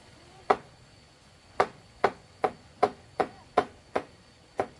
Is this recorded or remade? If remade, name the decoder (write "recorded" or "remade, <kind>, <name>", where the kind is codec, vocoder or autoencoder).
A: remade, vocoder, Vocos